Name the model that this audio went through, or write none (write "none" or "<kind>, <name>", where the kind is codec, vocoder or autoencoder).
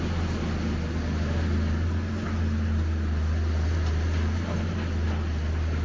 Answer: none